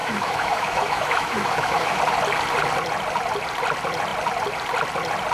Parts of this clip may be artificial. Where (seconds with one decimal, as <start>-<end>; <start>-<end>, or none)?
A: 0.0-2.0